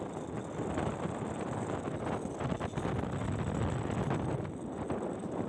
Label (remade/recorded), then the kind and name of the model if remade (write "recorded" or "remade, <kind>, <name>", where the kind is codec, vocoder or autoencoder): recorded